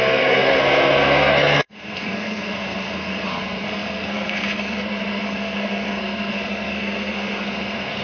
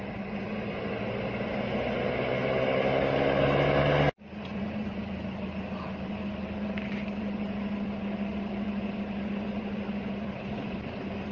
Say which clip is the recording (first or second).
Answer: second